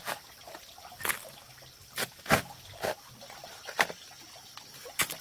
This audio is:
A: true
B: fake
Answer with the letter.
A